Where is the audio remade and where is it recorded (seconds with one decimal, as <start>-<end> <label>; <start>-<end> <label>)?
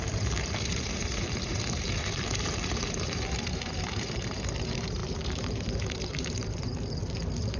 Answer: 0.0-7.6 remade